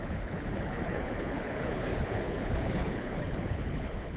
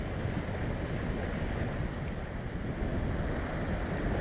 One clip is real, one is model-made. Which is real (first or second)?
second